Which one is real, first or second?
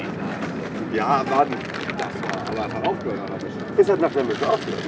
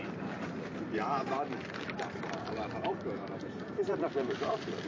first